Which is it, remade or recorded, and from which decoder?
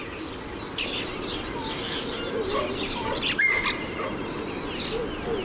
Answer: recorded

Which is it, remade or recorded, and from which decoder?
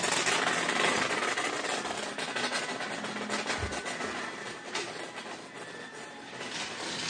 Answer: recorded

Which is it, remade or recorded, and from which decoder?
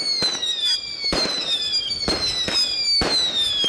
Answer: recorded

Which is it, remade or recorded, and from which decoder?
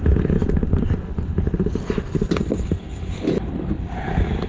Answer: recorded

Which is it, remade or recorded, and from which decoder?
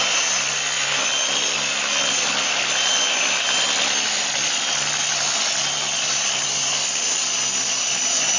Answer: recorded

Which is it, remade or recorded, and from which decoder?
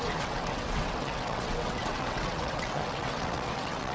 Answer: remade, vocoder, WaveNeXt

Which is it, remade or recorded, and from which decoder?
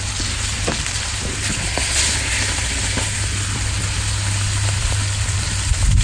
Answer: recorded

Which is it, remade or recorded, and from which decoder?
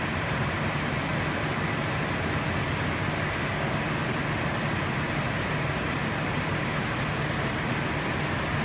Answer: recorded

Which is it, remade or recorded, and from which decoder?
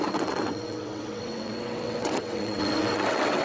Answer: remade, vocoder, WaveNeXt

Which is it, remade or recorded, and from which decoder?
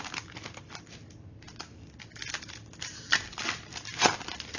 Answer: recorded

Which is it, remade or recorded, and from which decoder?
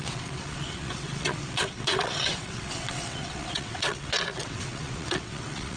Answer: remade, vocoder, WaveNeXt